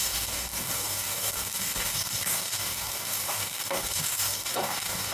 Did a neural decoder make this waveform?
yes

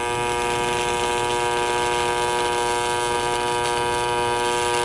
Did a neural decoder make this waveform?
no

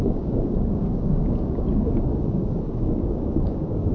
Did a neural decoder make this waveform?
yes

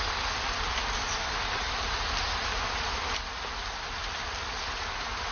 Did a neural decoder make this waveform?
no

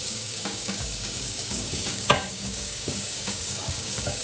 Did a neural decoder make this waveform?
yes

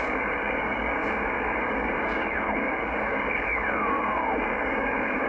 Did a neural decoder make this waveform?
yes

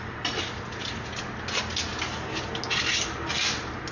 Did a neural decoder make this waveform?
no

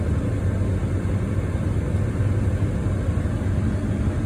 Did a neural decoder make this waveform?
no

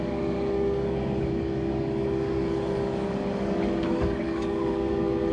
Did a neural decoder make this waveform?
yes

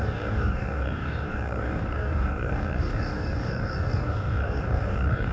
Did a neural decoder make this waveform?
yes